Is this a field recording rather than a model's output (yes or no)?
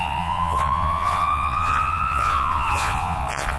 no